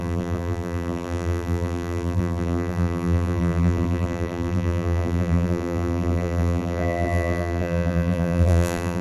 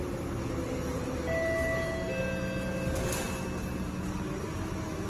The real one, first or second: second